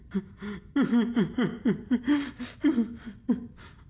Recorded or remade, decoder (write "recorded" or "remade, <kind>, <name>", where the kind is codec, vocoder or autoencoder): recorded